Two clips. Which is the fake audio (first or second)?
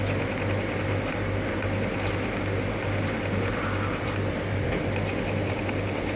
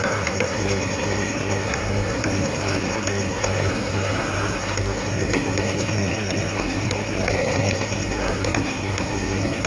second